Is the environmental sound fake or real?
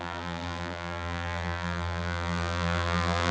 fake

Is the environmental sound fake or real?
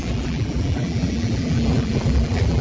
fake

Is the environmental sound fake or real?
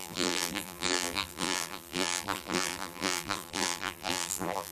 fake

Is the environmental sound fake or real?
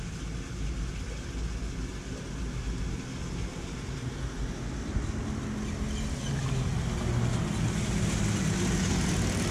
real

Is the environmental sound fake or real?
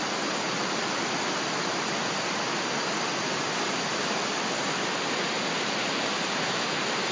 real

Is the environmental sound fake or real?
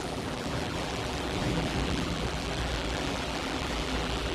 fake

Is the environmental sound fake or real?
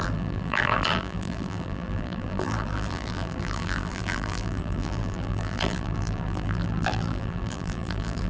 fake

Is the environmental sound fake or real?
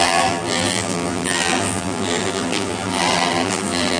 fake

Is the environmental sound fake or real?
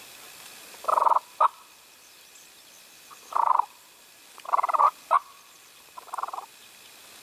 real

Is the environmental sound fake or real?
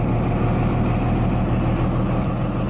real